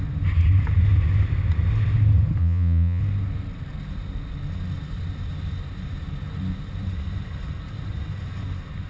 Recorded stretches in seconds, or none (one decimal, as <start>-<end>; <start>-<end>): 0.0-2.4; 3.0-8.9